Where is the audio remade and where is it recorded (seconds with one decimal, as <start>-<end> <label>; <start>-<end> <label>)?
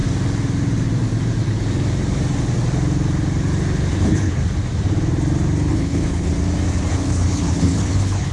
0.0-3.9 recorded; 3.9-4.4 remade; 4.4-5.7 recorded; 5.7-6.3 remade; 6.3-6.9 recorded; 6.9-8.3 remade